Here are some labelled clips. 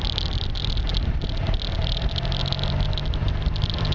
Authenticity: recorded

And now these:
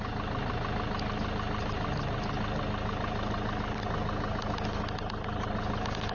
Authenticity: recorded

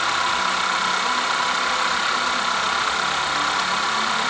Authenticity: recorded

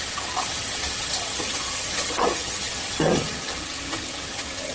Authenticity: remade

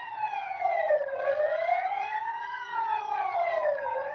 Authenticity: remade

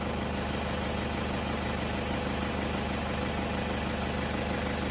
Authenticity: recorded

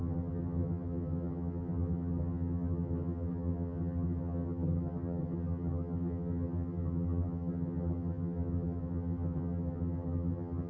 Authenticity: remade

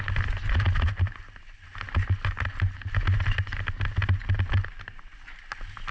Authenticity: recorded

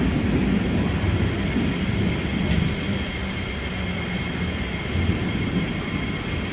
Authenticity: recorded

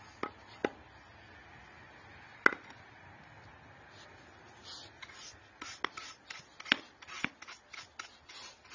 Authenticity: recorded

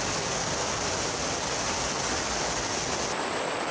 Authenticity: recorded